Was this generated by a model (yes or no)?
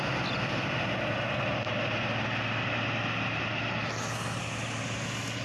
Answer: no